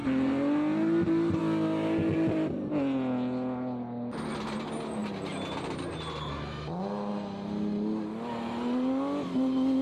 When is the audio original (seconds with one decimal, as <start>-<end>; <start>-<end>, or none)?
0.0-9.8